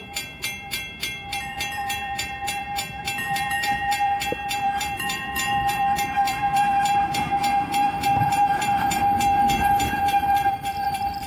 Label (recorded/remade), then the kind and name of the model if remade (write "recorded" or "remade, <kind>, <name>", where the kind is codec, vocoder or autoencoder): remade, vocoder, BigVGAN v2